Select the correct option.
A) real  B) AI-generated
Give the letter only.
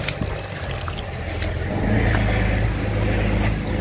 A